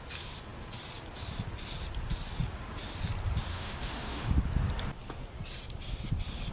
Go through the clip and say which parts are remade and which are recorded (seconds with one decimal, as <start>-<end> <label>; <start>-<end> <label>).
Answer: 0.0-3.5 recorded; 3.5-4.4 remade; 4.4-6.5 recorded